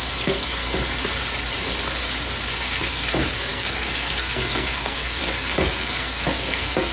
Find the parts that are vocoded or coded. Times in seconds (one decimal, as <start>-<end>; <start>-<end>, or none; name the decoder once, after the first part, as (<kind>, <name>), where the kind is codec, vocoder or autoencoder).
0.0-0.8 (codec, SNAC); 2.5-6.9